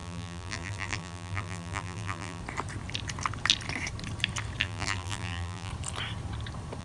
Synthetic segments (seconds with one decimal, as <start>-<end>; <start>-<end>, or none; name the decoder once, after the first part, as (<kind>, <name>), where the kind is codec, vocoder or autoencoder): 0.0-2.4 (vocoder, BigVGAN v2); 4.6-5.7